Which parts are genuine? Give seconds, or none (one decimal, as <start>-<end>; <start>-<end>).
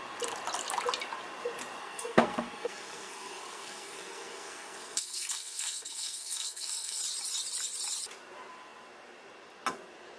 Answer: 0.0-1.8; 7.0-10.2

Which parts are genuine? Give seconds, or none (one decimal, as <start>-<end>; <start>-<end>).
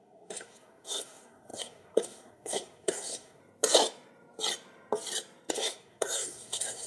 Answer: 3.4-5.5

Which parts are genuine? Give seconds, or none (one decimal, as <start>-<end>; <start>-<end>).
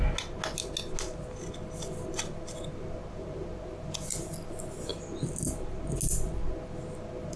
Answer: 0.0-7.4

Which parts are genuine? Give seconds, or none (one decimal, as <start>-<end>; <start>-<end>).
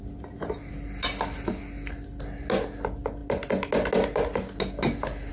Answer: 0.0-5.3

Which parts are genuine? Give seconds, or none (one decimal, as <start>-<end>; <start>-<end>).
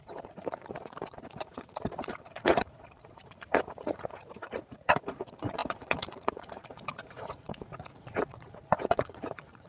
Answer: none